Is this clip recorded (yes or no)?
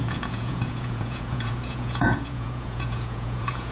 no